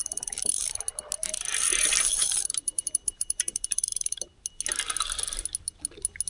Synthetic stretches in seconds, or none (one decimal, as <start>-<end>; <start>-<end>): 0.0-0.8; 1.5-4.4